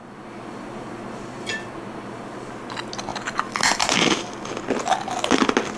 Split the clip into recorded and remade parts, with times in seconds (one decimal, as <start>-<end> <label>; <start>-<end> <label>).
0.0-2.5 remade; 2.5-5.8 recorded